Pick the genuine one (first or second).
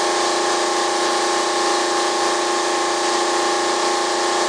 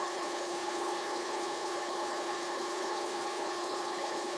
first